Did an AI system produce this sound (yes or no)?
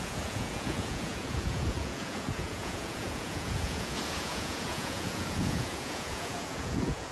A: yes